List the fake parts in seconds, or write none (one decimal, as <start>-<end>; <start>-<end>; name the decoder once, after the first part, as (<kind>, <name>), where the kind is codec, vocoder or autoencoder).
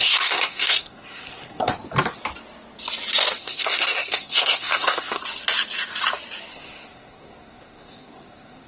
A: 0.0-1.7 (codec, SNAC); 3.4-5.2; 6.5-8.7